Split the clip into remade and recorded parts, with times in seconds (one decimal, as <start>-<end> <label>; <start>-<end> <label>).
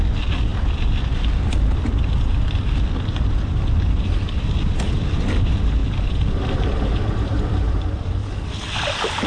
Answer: 0.0-8.2 remade; 8.2-9.3 recorded